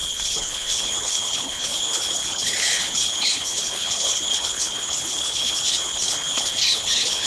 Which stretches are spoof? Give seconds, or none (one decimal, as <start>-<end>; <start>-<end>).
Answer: 0.0-7.3